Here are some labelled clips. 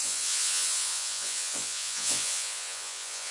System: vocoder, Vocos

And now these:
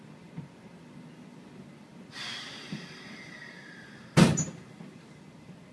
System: none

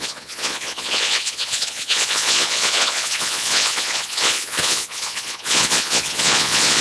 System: vocoder, Vocos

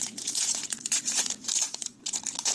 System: vocoder, Vocos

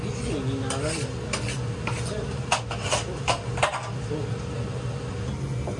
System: none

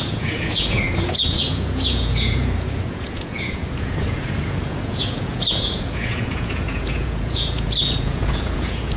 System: vocoder, Vocos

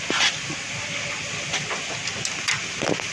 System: none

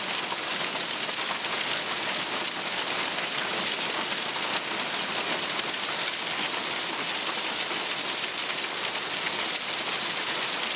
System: none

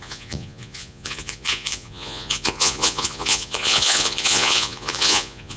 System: vocoder, Vocos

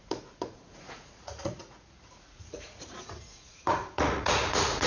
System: vocoder, Vocos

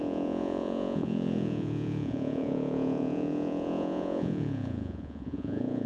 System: vocoder, Vocos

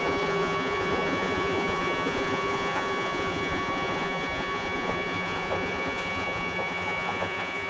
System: vocoder, Vocos